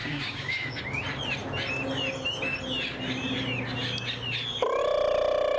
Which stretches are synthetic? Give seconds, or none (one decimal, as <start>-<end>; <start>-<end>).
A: 0.0-0.8